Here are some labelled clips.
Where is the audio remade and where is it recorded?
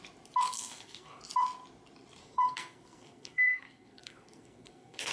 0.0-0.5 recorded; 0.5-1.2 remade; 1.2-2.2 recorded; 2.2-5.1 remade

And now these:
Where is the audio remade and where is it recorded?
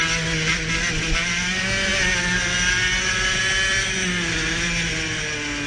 0.0-5.7 recorded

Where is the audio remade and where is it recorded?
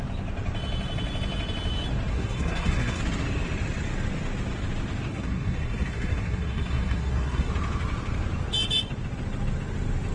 0.0-2.1 recorded; 2.1-3.0 remade; 3.0-5.1 recorded; 5.1-7.5 remade; 7.5-10.1 recorded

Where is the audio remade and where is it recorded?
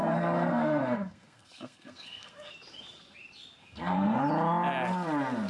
0.0-2.5 remade; 2.5-3.6 recorded; 3.6-4.2 remade; 4.2-5.5 recorded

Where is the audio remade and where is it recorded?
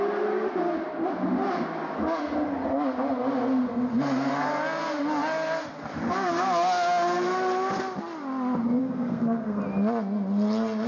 0.0-8.8 recorded; 8.8-9.6 remade; 9.6-10.9 recorded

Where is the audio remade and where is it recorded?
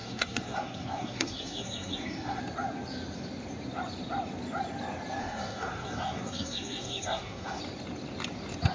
0.0-2.4 remade; 2.4-5.2 recorded; 5.2-7.6 remade; 7.6-8.7 recorded